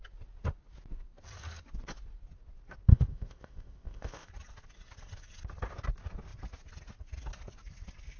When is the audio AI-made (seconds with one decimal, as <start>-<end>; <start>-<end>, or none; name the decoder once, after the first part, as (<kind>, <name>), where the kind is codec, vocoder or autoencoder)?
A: 2.9-4.3 (codec, ZipCodec)